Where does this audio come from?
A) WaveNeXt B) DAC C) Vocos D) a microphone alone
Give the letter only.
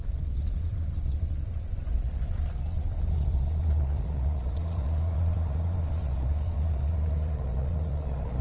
C